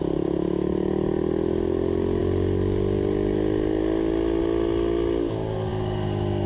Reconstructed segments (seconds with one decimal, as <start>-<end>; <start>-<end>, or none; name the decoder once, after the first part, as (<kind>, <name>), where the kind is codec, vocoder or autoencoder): none

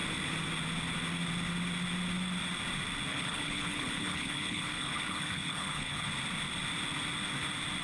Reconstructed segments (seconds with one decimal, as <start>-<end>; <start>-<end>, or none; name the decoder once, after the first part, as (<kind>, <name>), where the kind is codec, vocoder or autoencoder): 3.1-6.1 (codec, HILCodec)

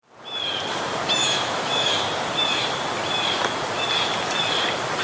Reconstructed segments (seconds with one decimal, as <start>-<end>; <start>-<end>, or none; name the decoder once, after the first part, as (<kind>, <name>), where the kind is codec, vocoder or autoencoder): 1.2-2.1 (autoencoder, DAC-VAE)

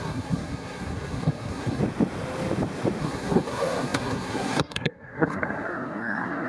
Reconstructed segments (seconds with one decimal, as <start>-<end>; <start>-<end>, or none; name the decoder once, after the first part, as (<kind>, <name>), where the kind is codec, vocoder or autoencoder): 0.0-1.8 (codec, SNAC); 3.0-6.5

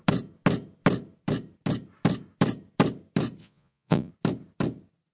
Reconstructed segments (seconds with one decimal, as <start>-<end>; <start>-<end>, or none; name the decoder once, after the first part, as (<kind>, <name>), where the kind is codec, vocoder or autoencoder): 3.4-4.1 (vocoder, Vocos)

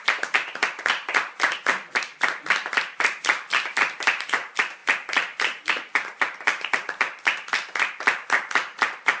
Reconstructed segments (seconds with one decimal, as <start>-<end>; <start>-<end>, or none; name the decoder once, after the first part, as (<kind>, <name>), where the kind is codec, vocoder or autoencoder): 0.0-4.8 (vocoder, BigVGAN v2); 8.5-9.2